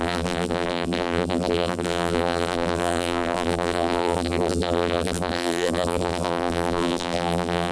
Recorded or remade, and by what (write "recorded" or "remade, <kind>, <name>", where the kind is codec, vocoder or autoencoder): remade, vocoder, BigVGAN v2